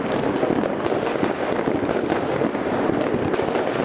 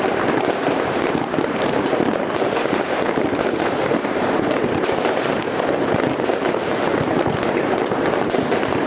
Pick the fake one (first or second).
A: second